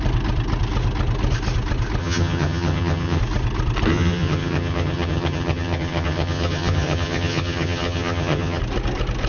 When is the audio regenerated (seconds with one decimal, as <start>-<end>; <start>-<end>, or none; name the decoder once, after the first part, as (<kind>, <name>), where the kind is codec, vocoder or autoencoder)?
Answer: 2.0-3.2 (vocoder, HiFi-GAN); 3.9-8.6